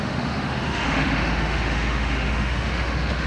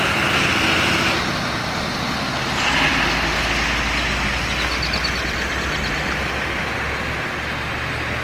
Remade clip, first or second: first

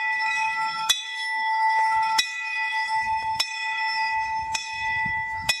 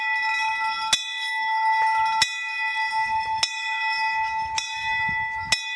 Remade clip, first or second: first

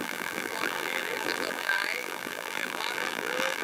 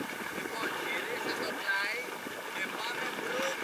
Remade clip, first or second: first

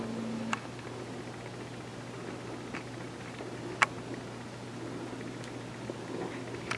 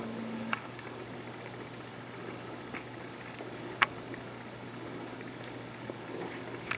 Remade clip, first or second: second